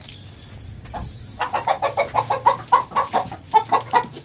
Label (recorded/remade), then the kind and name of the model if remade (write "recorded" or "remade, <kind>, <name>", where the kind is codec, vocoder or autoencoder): recorded